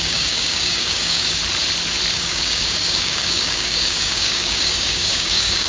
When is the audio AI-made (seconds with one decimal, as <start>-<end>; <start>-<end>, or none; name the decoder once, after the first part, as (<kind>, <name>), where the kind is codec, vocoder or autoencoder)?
0.0-1.4 (codec, DAC); 2.1-5.7